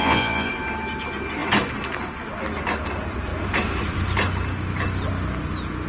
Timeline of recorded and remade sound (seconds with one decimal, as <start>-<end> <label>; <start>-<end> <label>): 0.0-0.5 remade; 0.5-5.9 recorded